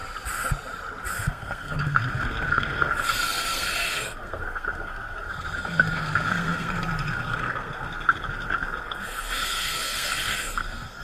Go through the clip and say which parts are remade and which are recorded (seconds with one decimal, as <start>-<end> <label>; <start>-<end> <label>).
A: 0.0-1.1 recorded; 1.1-11.0 remade